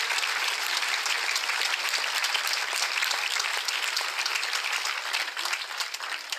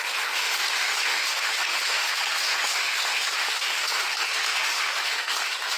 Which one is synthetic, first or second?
second